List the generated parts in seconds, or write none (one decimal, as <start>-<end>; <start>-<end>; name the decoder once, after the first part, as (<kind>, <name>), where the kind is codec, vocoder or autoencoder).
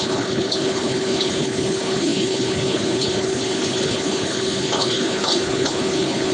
0.0-6.3 (codec, HILCodec)